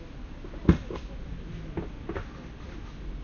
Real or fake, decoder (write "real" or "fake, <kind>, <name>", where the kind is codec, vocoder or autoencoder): real